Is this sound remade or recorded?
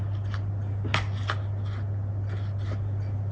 recorded